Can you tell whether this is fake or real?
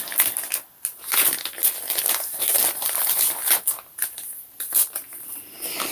real